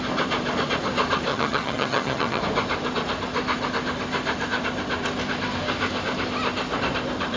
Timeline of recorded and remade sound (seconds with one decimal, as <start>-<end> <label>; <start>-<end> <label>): 0.0-1.3 recorded; 1.3-2.4 remade; 2.4-7.4 recorded